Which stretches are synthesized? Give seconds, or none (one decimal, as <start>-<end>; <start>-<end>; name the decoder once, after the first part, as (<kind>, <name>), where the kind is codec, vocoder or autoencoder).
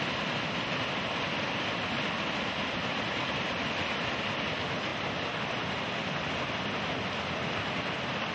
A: none